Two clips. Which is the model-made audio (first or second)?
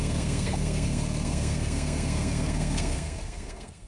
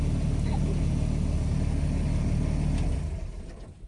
first